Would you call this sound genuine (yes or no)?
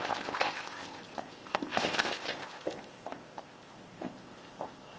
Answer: no